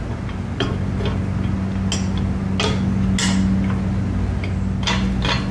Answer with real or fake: real